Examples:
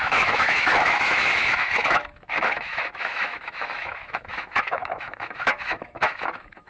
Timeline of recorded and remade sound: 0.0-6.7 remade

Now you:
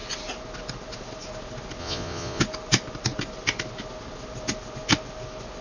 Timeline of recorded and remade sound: 0.0-1.8 recorded; 1.8-2.4 remade; 2.4-5.6 recorded

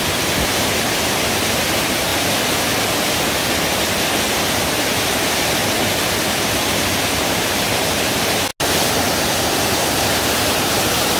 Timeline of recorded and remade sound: 0.0-2.1 remade; 2.1-4.8 recorded; 4.8-5.6 remade; 5.6-6.3 recorded; 6.3-8.5 remade; 8.5-9.0 recorded; 9.0-11.2 remade

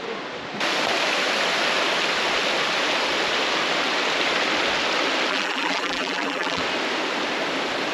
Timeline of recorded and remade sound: 0.0-5.3 recorded; 5.3-6.6 remade; 6.6-7.9 recorded

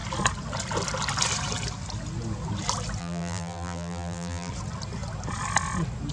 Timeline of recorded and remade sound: 0.0-3.0 recorded; 3.0-4.5 remade; 4.5-6.1 recorded

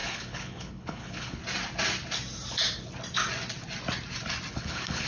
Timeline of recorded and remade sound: 0.0-1.4 remade; 1.4-4.5 recorded; 4.5-5.1 remade

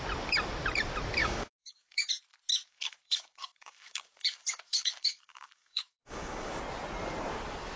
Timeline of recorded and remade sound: 0.0-1.2 recorded; 1.2-2.1 remade; 2.1-2.5 recorded; 2.5-6.6 remade; 6.6-7.8 recorded